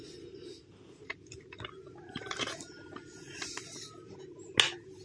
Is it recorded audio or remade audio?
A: recorded